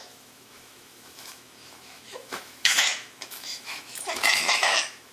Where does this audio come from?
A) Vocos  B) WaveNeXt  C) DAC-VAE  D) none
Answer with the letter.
C